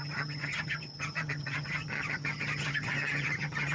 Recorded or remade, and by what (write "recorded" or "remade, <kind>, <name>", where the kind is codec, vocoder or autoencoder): remade, vocoder, HiFi-GAN